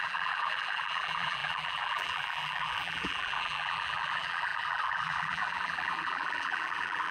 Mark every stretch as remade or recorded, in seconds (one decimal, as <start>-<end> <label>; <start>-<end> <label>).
0.0-7.1 remade